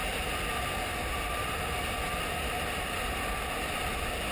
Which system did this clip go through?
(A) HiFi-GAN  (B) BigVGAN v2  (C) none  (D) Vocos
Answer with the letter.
C